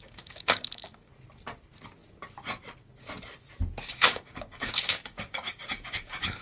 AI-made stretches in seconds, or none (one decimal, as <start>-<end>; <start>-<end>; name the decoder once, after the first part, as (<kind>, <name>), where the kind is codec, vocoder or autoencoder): 0.0-1.1 (codec, DAC); 3.9-6.4